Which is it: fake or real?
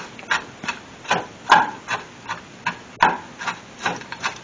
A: real